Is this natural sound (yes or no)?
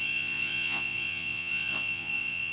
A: no